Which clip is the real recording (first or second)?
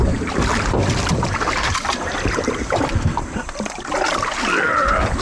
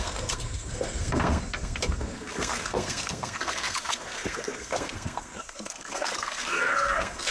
first